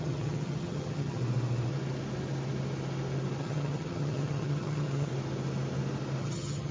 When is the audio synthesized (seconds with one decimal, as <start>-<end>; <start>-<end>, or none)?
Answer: 0.0-1.2; 3.4-5.1; 6.2-6.7